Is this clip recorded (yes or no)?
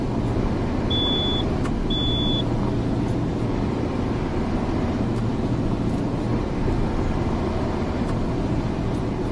yes